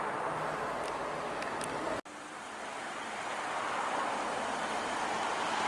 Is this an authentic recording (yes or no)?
yes